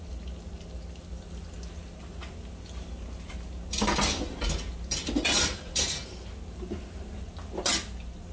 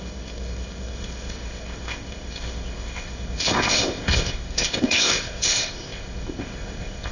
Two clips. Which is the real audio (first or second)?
first